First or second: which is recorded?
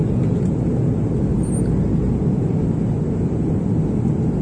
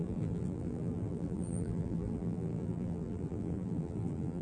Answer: first